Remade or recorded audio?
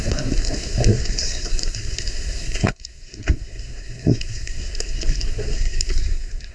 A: remade